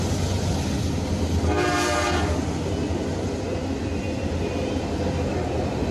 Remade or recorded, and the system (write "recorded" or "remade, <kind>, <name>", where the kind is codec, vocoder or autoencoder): recorded